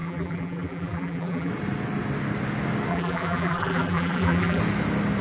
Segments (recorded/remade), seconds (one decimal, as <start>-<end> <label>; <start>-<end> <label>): 0.0-1.5 remade; 1.5-2.9 recorded; 2.9-4.6 remade; 4.6-5.2 recorded